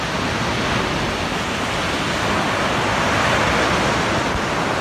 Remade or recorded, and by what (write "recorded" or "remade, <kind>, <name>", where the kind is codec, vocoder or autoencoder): recorded